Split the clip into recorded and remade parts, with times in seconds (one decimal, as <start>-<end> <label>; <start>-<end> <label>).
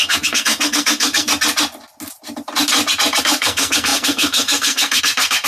0.0-1.3 remade; 1.3-3.2 recorded; 3.2-5.5 remade